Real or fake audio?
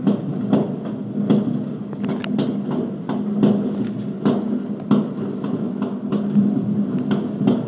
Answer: real